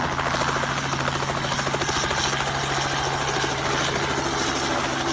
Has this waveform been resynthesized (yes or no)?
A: no